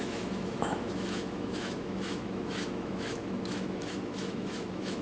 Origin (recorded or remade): remade